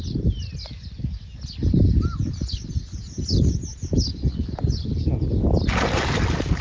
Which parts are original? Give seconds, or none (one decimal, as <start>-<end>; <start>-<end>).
0.0-6.6